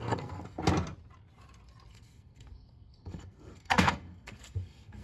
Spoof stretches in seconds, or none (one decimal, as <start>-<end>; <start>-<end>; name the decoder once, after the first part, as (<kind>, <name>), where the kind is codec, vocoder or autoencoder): 0.0-0.6 (codec, SNAC); 1.9-5.0